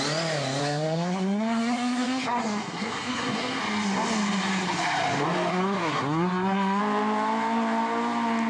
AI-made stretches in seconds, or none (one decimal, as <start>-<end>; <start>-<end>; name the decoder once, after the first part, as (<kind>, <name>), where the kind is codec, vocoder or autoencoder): 0.6-3.6 (codec, SNAC); 5.5-6.8